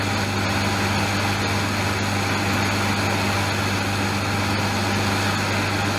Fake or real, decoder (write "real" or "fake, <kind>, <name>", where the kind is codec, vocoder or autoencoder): real